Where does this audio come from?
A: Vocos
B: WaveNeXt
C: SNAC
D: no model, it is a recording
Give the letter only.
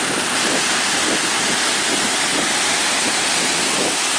D